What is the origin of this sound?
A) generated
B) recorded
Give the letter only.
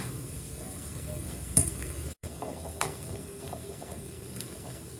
A